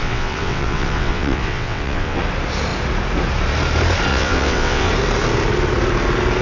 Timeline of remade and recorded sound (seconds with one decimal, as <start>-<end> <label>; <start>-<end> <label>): 0.0-2.2 remade; 2.2-4.1 recorded; 4.1-4.9 remade; 4.9-6.4 recorded